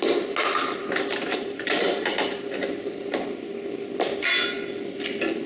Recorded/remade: recorded